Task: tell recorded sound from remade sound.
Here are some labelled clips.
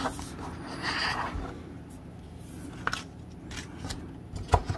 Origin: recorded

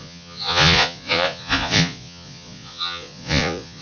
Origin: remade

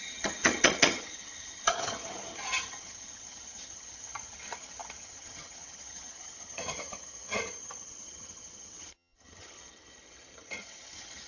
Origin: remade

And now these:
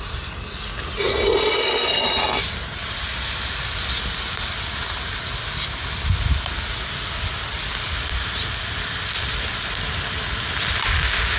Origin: recorded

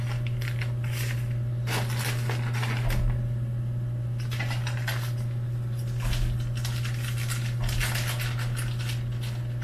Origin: recorded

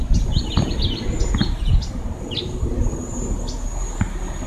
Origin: recorded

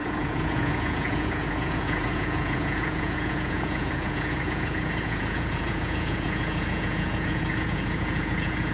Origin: remade